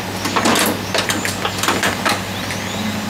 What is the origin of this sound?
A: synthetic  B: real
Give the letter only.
B